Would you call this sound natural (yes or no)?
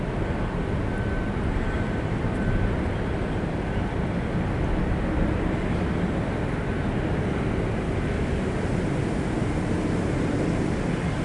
yes